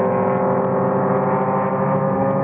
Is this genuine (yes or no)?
yes